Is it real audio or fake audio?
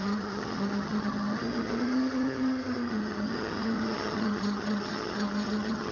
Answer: fake